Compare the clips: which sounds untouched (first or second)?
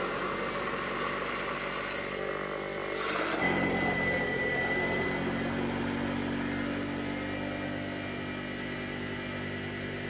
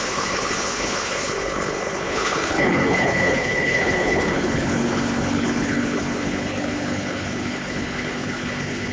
first